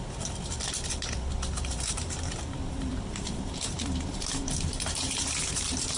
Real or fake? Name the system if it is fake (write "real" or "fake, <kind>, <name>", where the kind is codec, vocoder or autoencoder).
fake, vocoder, BigVGAN v2